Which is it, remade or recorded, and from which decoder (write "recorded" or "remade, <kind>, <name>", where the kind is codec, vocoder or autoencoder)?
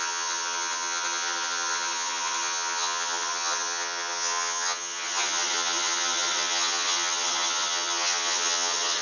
remade, vocoder, HiFi-GAN